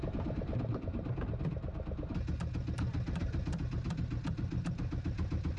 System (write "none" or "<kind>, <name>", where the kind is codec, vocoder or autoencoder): none